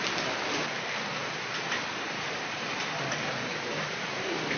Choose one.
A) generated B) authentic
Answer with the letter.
B